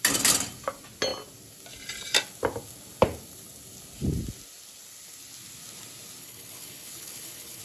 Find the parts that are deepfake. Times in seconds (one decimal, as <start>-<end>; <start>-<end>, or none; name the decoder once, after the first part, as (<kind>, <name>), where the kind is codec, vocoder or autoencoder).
6.2-7.6 (codec, HILCodec)